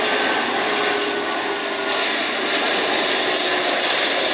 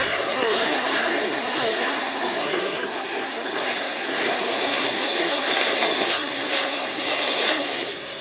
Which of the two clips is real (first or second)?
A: first